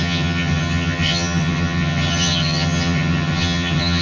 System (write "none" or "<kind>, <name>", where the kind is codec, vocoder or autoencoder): vocoder, HiFi-GAN